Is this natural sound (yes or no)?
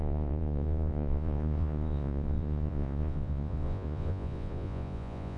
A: no